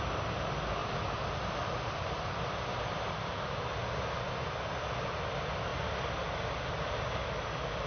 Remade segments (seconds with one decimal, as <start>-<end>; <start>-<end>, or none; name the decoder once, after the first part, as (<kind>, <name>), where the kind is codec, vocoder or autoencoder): none